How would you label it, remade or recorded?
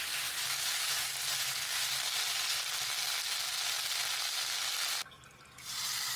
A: recorded